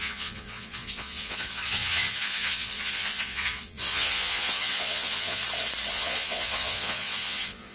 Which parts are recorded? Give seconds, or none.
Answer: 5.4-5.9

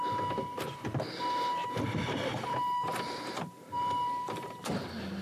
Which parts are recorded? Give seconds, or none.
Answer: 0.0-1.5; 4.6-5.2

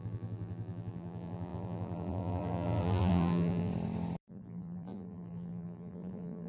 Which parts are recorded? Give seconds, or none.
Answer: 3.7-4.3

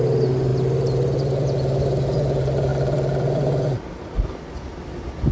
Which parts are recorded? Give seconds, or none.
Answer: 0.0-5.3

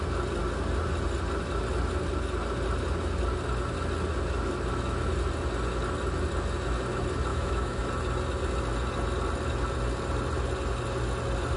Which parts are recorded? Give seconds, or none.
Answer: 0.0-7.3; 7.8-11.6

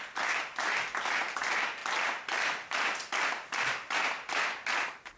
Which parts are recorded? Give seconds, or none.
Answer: 0.0-5.2